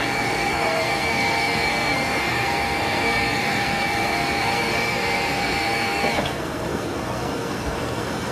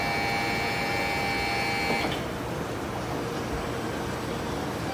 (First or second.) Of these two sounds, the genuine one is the second